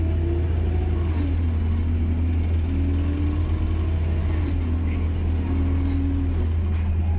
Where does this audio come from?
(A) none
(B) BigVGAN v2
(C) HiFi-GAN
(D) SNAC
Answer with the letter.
A